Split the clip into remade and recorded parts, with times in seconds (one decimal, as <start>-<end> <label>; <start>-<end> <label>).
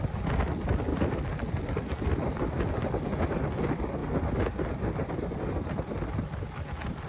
0.0-7.1 recorded